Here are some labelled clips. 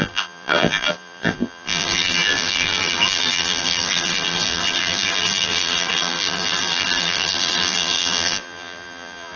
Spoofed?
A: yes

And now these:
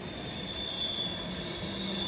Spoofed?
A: no